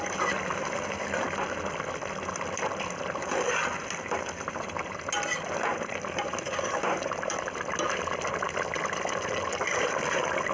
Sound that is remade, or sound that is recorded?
recorded